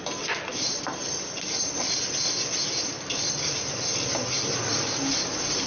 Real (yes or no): yes